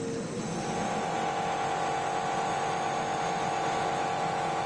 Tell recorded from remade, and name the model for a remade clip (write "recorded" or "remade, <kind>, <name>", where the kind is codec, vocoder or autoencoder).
recorded